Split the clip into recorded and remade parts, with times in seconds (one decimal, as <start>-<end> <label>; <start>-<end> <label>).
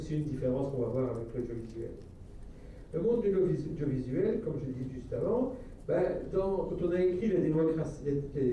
0.0-4.2 recorded; 4.2-7.9 remade; 7.9-8.5 recorded